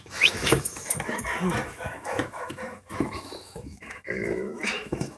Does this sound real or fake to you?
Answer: fake